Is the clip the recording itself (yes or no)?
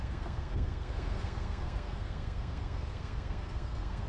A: no